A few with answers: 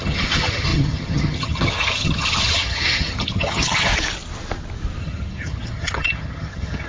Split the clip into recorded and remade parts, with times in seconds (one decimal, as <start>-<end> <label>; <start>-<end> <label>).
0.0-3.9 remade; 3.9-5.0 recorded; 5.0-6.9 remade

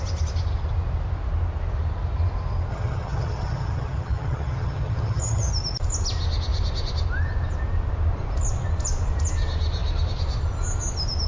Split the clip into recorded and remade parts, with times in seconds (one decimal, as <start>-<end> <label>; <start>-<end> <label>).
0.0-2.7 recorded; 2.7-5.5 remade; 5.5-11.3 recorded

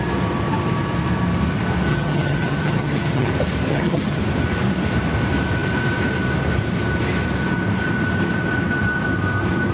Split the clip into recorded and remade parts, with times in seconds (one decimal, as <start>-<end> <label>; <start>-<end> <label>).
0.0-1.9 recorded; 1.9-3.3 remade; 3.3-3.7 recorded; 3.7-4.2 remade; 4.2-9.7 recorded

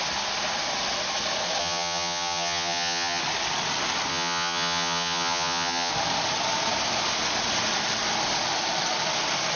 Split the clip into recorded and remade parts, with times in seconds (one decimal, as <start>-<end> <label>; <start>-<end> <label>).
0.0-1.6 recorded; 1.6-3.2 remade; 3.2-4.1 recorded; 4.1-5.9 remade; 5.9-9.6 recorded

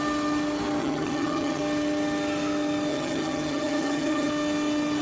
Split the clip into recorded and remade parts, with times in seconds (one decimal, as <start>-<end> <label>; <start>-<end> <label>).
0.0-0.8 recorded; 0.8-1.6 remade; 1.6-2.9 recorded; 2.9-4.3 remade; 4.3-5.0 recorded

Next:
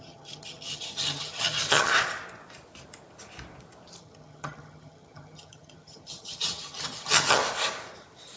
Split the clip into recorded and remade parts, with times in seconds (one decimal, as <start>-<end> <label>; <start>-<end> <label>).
0.0-1.9 remade; 1.9-4.0 recorded; 4.0-7.4 remade; 7.4-8.4 recorded